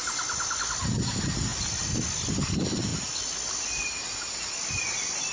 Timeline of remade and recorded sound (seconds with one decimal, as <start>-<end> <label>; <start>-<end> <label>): 0.0-5.3 recorded